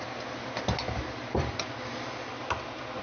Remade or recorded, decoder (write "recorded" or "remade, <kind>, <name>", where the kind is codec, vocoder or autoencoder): recorded